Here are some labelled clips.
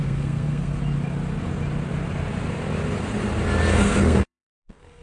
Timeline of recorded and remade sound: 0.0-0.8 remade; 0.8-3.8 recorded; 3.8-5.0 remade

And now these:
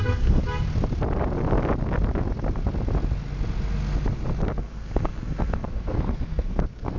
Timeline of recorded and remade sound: 0.0-0.4 remade; 0.4-4.6 recorded; 4.6-7.0 remade

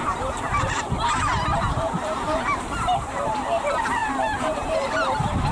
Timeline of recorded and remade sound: 0.0-3.3 remade; 3.3-4.0 recorded; 4.0-5.5 remade